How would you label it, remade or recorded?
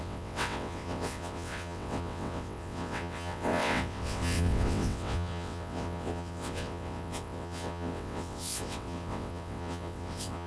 remade